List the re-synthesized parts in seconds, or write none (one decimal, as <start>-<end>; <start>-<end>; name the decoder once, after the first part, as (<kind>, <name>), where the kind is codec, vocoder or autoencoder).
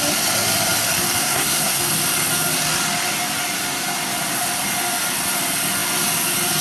1.2-1.8 (codec, SNAC)